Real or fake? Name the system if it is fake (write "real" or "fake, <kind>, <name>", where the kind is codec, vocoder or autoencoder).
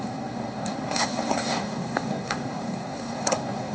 fake, codec, SNAC